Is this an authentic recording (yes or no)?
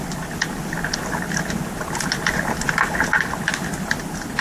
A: yes